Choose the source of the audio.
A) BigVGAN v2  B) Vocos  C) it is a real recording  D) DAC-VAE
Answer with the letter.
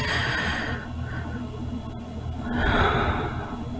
C